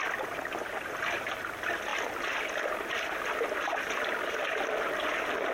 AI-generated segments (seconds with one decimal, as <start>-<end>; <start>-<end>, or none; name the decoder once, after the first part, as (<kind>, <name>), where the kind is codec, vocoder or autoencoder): none